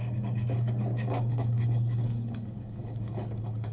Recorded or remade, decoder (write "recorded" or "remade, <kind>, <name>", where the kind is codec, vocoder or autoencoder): remade, codec, DAC